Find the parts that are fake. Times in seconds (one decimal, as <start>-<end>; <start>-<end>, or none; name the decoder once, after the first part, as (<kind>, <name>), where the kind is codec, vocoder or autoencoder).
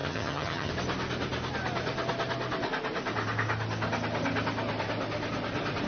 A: 0.0-0.7 (vocoder, HiFi-GAN)